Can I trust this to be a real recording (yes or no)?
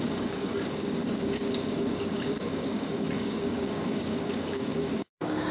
no